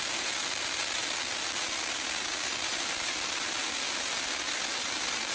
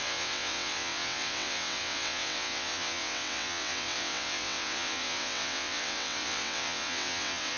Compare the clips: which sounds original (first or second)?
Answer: first